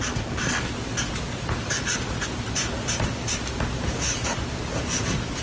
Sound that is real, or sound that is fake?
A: real